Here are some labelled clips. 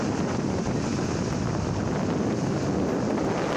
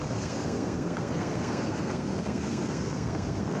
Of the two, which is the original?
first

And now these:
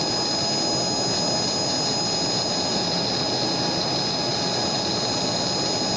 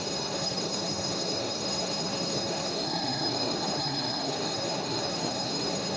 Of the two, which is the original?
first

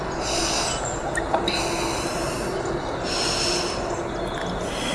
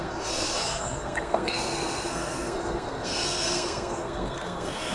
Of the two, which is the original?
first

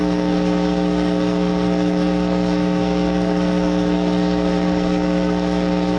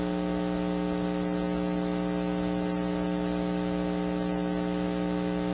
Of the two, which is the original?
second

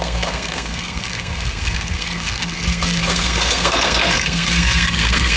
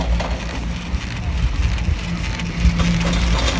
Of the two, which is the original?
second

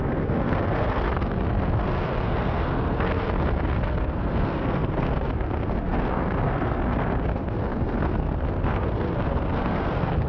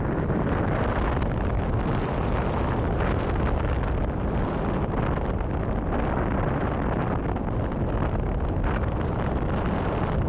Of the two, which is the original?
second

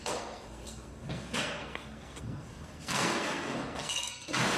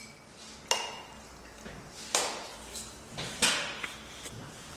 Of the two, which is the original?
second